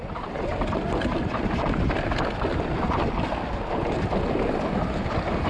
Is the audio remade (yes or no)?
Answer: no